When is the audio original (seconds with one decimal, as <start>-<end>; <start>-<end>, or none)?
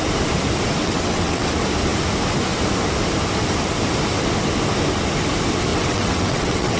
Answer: 0.0-0.8; 1.5-5.7